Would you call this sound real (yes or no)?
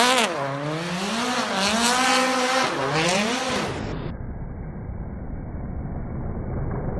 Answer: yes